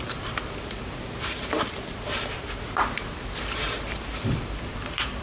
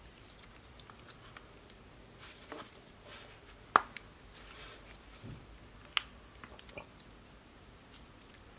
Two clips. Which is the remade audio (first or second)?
first